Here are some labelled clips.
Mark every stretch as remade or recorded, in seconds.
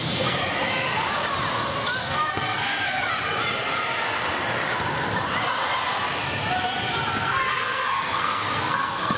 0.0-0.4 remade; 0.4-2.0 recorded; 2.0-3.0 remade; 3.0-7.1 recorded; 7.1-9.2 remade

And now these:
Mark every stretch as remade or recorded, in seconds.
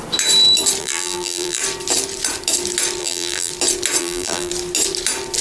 0.0-0.8 recorded; 0.8-1.6 remade; 1.6-3.0 recorded; 3.0-3.5 remade; 3.5-4.0 recorded; 4.0-4.5 remade; 4.5-5.4 recorded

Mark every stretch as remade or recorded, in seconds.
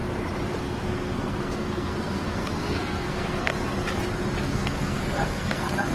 0.0-0.6 recorded; 0.6-3.5 remade; 3.5-4.4 recorded; 4.4-5.9 remade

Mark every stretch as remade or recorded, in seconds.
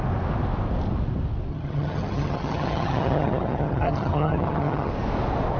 0.0-1.5 recorded; 1.5-4.9 remade; 4.9-5.6 recorded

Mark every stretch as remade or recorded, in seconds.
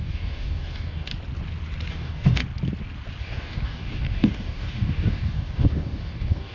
0.0-1.1 remade; 1.1-1.9 recorded; 1.9-2.4 remade; 2.4-3.2 recorded; 3.2-6.5 remade